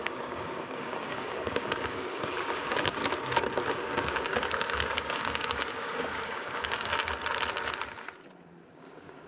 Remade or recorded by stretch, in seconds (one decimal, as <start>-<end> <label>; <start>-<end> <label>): 0.0-3.0 remade; 3.0-3.7 recorded; 3.7-6.9 remade; 6.9-8.7 recorded; 8.7-9.3 remade